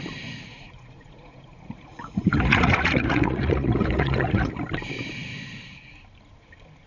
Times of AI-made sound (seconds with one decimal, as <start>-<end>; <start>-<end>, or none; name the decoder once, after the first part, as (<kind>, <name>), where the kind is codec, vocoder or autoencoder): 0.5-4.6 (vocoder, Vocos)